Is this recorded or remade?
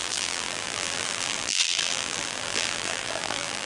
remade